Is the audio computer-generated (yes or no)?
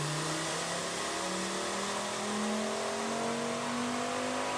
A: no